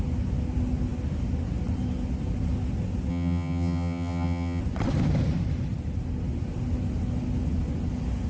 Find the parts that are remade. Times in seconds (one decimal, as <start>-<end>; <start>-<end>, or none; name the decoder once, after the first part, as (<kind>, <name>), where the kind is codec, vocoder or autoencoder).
3.1-4.6 (vocoder, HiFi-GAN)